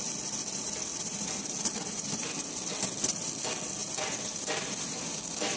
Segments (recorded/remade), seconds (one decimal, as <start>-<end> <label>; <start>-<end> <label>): 0.0-0.9 recorded; 0.9-2.5 remade; 2.5-3.8 recorded; 3.8-5.1 remade; 5.1-5.6 recorded